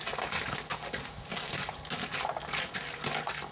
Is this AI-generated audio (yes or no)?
no